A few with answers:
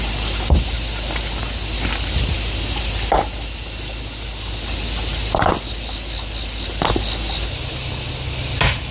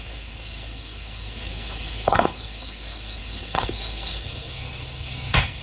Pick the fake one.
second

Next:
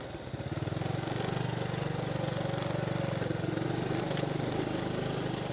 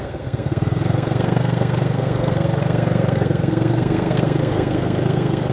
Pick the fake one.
second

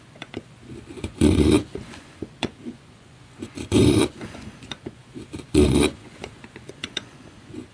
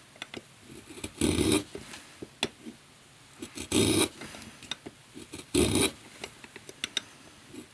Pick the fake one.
first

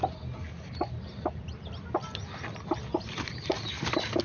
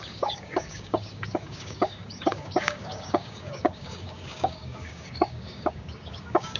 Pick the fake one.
second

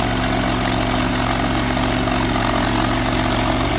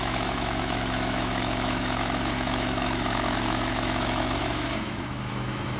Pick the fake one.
second